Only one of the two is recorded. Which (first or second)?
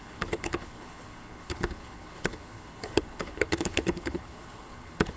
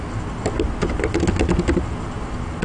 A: second